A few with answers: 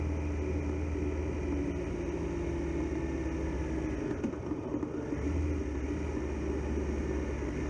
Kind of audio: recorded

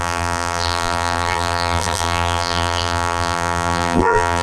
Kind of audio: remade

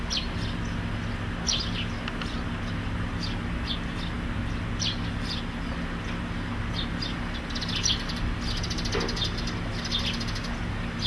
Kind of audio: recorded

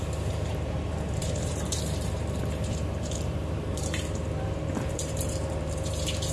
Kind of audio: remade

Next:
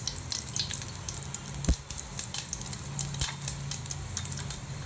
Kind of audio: recorded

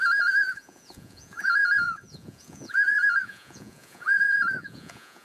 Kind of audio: remade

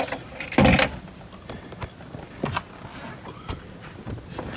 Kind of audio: recorded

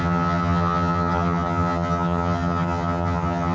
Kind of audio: remade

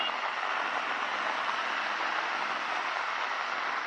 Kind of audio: recorded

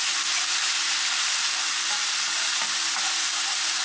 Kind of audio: recorded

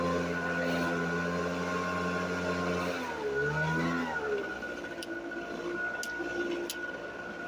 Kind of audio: recorded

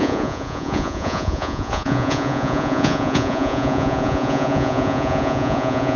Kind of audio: remade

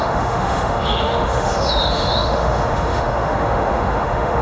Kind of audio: remade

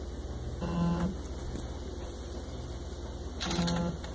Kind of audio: recorded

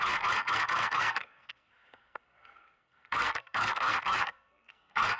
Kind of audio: remade